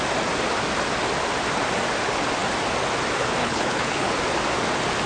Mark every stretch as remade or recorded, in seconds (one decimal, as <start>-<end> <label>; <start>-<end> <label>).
0.0-3.4 recorded; 3.4-4.1 remade; 4.1-5.1 recorded